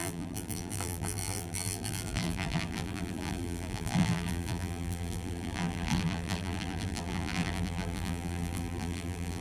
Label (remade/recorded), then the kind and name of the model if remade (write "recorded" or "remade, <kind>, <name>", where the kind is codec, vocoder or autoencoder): remade, vocoder, BigVGAN v2